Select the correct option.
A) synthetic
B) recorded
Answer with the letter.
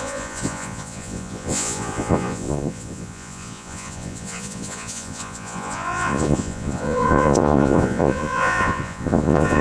A